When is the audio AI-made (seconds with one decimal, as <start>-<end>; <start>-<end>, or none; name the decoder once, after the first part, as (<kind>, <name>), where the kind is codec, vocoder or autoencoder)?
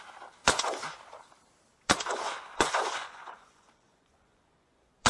0.4-1.0 (vocoder, Vocos); 1.7-5.1